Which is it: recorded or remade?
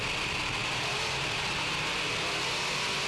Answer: recorded